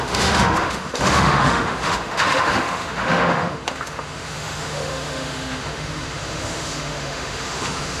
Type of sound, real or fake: fake